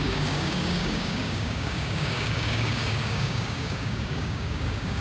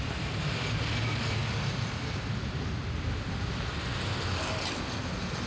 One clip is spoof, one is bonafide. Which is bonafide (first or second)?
second